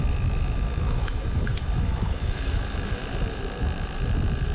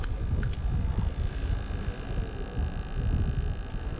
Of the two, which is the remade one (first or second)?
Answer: first